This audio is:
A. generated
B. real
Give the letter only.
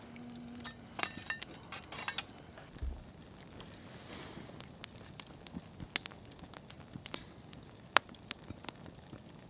B